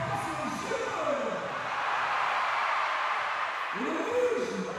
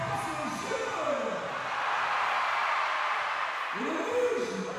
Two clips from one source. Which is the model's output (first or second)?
first